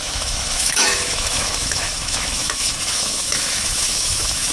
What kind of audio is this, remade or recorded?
remade